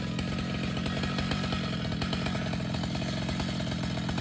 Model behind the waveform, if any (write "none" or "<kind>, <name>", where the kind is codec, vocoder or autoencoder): none